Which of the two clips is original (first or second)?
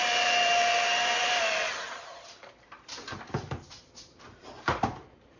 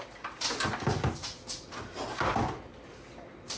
second